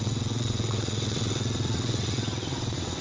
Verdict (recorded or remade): remade